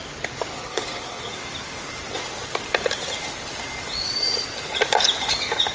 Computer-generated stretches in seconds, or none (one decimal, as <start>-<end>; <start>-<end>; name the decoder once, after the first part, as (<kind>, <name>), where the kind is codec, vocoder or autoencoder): 0.5-1.3 (codec, HILCodec)